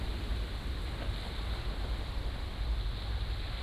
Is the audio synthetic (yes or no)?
no